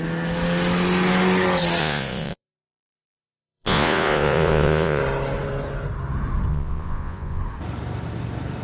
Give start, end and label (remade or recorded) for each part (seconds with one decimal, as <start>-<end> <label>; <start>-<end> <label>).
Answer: 0.0-1.8 recorded; 1.8-5.0 remade; 5.0-6.5 recorded; 6.5-7.4 remade; 7.4-8.6 recorded